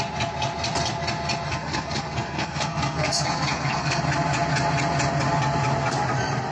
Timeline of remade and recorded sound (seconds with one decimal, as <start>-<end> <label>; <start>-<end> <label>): 0.0-1.5 recorded; 1.5-4.0 remade; 4.0-6.5 recorded